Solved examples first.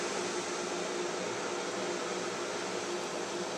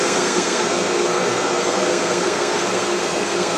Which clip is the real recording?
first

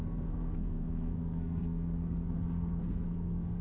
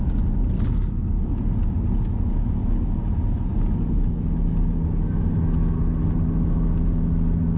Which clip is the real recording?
second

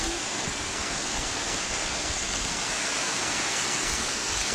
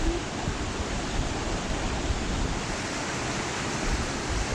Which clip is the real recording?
second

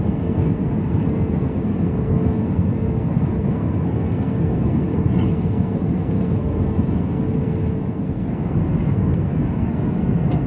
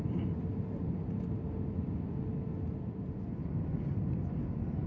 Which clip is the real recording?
second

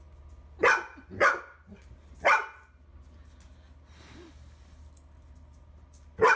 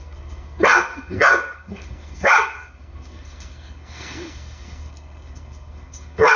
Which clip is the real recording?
first